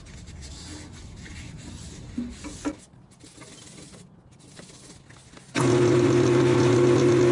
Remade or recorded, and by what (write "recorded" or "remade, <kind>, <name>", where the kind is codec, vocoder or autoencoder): recorded